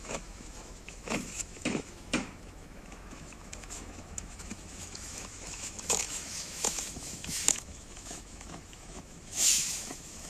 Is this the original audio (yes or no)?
no